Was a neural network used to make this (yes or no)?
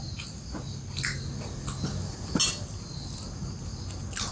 no